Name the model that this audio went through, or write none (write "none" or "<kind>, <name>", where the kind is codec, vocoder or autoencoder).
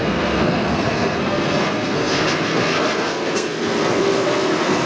codec, SNAC